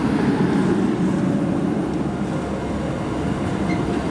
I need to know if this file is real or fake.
real